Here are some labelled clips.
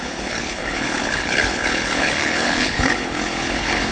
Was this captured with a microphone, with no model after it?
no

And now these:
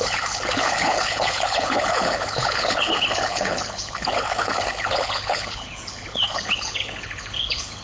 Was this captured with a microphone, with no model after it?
no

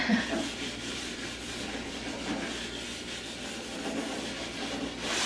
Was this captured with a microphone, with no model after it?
yes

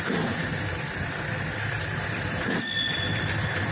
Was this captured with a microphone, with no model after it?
yes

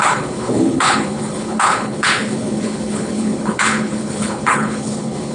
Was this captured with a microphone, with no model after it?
no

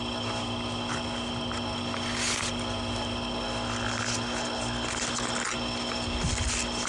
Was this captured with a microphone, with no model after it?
yes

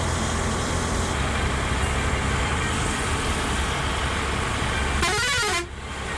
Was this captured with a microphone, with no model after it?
yes